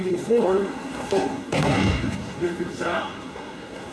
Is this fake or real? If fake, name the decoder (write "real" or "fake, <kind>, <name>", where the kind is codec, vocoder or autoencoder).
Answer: fake, codec, SNAC